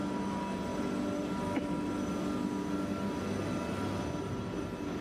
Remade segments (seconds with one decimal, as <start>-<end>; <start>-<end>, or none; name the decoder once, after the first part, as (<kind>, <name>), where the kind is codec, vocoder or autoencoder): none